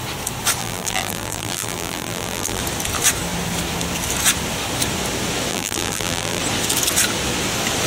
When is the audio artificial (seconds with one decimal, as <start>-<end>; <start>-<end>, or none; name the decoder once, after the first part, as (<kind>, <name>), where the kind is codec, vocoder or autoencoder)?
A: 0.6-2.6 (vocoder, BigVGAN v2); 5.5-6.4